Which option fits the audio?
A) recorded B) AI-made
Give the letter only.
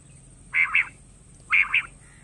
A